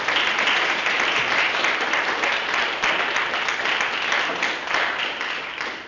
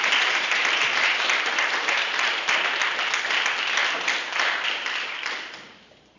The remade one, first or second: second